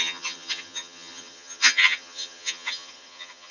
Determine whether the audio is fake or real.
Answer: fake